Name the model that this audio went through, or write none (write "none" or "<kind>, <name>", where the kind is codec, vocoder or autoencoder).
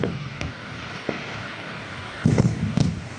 codec, DAC